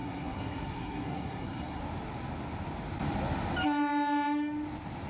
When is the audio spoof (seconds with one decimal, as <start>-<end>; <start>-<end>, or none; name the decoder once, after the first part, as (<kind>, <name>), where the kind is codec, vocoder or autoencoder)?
0.0-1.8 (codec, SNAC)